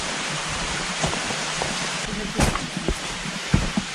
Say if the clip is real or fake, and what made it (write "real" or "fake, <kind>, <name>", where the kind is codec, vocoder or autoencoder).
fake, vocoder, BigVGAN v2